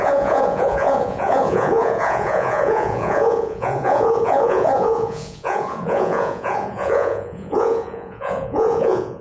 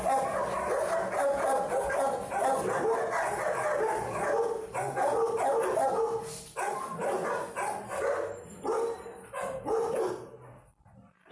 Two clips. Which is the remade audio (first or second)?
first